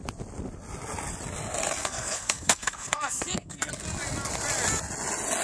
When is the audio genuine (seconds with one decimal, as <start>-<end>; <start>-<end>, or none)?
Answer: 0.0-1.8; 3.7-5.4